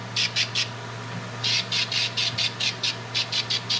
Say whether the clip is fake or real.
real